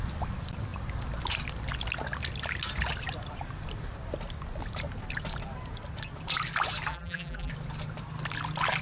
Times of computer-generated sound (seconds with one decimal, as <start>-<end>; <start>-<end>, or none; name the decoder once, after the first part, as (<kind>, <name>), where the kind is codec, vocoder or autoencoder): 6.9-7.5 (vocoder, BigVGAN v2)